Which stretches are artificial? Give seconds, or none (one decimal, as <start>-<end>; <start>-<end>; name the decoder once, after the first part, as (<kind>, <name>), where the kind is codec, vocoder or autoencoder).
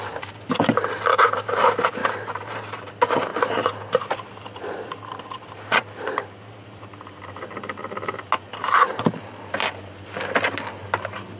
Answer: 1.1-1.6 (vocoder, BigVGAN v2); 2.0-2.9; 3.3-7.2